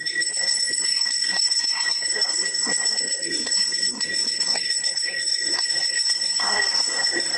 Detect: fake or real fake